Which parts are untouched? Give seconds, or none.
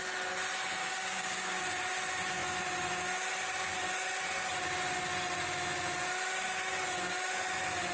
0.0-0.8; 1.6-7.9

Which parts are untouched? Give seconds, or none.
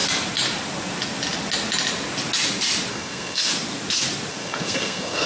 0.0-2.9; 3.5-4.3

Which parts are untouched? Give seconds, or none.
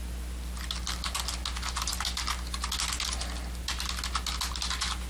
0.0-5.1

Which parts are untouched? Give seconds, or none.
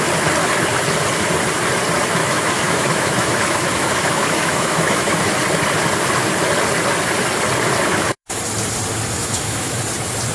0.0-2.2; 5.3-7.9; 8.4-9.2; 9.8-10.3